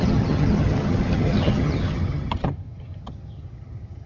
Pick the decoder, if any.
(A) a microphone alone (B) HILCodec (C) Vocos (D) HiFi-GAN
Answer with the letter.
D